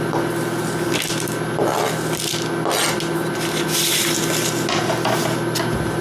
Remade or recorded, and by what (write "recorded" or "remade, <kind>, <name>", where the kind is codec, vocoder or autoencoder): recorded